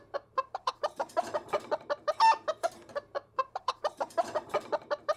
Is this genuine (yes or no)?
no